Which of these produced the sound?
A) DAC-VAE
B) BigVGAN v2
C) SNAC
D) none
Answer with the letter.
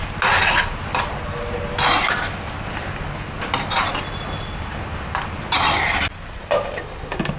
D